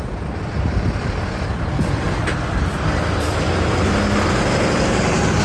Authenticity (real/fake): real